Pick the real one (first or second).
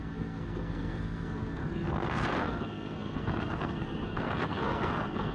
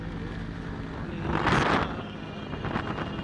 second